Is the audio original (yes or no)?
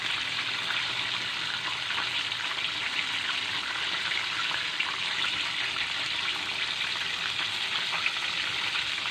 yes